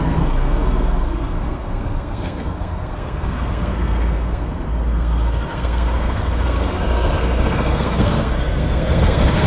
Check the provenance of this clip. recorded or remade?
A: remade